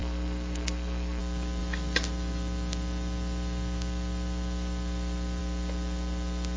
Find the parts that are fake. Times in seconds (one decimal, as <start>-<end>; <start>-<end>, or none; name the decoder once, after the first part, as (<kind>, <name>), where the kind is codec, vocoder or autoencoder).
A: 0.0-1.2 (codec, SNAC)